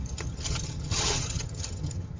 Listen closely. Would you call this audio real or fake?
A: fake